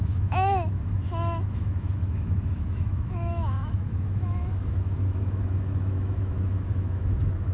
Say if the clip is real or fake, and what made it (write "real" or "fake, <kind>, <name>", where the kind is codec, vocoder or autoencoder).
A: fake, autoencoder, DAC-VAE